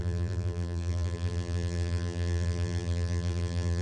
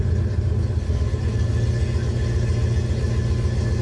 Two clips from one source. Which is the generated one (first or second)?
first